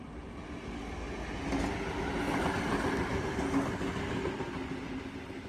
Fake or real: real